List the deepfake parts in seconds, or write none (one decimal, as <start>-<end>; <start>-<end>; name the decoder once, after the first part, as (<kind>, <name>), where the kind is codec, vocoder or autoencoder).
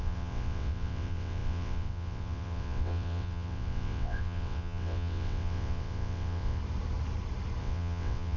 0.0-6.6 (vocoder, WaveNeXt); 7.6-8.4